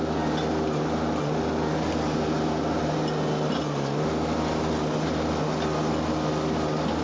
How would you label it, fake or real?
real